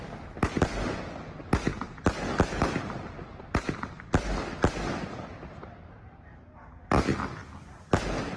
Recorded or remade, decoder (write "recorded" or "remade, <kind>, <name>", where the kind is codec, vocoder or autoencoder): recorded